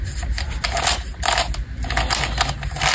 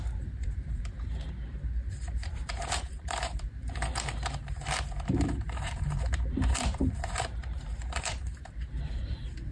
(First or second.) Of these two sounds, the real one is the first